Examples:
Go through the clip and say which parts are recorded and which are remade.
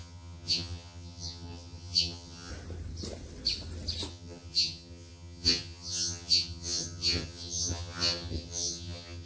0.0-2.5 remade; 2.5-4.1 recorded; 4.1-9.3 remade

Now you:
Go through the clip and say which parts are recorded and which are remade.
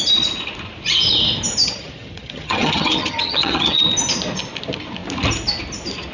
0.0-1.6 recorded; 1.6-3.8 remade; 3.8-6.1 recorded